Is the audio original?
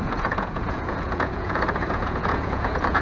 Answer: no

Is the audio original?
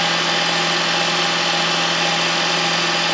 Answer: yes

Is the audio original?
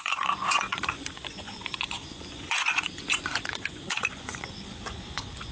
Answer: no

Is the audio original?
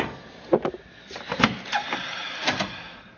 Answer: yes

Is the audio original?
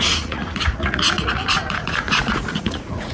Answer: no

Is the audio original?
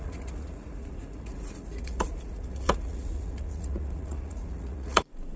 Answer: no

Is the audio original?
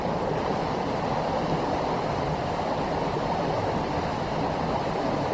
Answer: yes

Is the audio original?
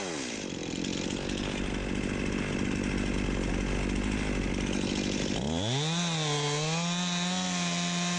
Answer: yes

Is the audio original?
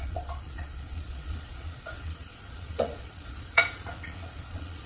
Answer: no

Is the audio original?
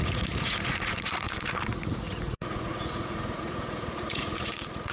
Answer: no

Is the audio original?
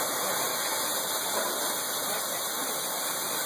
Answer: yes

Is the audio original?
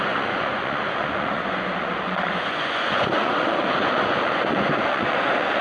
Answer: no